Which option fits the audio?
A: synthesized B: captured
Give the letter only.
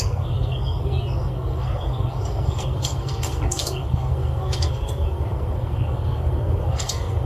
A